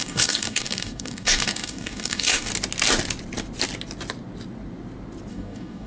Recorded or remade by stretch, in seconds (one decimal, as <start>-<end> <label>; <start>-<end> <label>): 0.0-2.5 remade; 2.5-5.3 recorded; 5.3-5.9 remade